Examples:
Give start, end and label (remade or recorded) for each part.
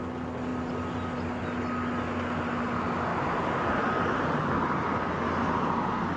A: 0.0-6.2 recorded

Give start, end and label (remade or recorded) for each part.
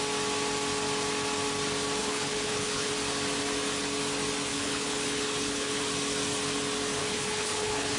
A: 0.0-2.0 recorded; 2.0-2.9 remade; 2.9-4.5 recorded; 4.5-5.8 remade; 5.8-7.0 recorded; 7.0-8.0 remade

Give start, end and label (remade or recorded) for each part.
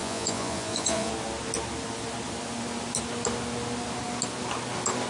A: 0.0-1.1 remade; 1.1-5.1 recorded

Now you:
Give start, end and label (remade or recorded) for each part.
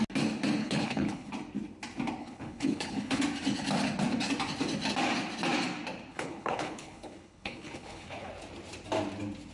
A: 0.0-0.6 recorded; 0.6-1.3 remade; 1.3-2.2 recorded; 2.2-3.2 remade; 3.2-6.1 recorded; 6.1-8.3 remade; 8.3-9.5 recorded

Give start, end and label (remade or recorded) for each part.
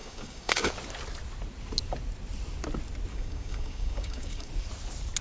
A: 0.0-0.7 remade; 0.7-3.1 recorded; 3.1-4.5 remade; 4.5-5.2 recorded